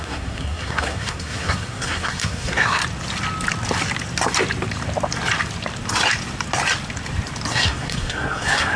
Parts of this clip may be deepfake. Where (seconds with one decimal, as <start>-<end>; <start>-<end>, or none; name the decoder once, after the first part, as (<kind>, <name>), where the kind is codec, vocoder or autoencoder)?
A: 0.0-2.8 (codec, SNAC); 7.5-8.8